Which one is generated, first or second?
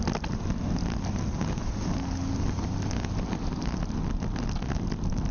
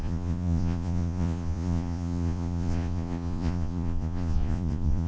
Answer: second